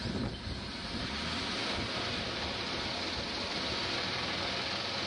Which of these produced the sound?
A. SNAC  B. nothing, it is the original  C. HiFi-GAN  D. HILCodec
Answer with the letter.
B